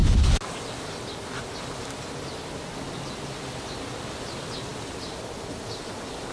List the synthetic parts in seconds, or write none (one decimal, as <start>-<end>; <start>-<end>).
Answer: none